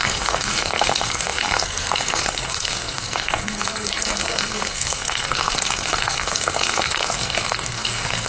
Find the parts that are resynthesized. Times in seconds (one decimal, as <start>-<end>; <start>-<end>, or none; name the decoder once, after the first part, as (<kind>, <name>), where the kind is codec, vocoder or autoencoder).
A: 0.0-8.3 (codec, SNAC)